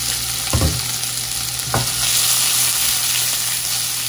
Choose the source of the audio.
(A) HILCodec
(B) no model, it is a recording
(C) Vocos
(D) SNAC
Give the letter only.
B